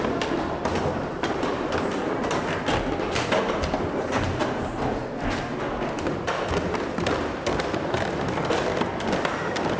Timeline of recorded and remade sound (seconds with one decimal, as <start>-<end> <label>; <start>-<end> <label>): 0.0-1.0 recorded; 1.0-2.4 remade; 2.4-9.8 recorded